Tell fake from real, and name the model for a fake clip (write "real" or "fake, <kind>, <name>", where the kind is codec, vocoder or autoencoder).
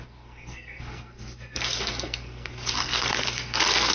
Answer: fake, codec, SNAC